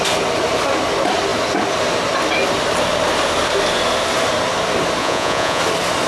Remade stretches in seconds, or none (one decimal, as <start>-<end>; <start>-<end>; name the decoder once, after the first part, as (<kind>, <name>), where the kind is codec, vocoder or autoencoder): 5.0-5.6 (vocoder, Vocos)